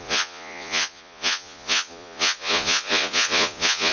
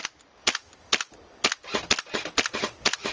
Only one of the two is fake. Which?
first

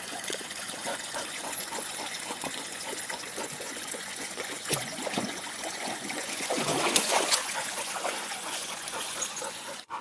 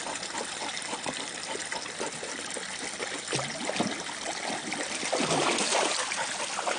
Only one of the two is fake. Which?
first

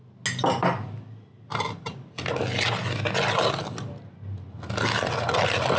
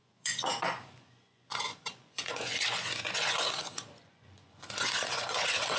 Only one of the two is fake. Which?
second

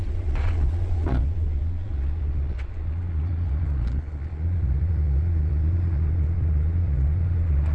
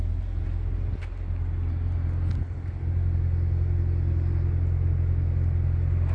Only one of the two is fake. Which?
first